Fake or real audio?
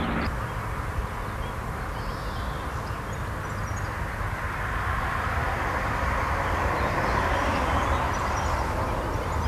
real